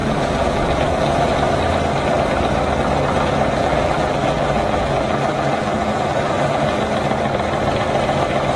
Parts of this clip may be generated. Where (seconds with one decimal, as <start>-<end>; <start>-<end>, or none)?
0.0-1.3; 3.6-6.8